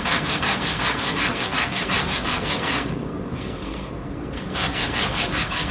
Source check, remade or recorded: remade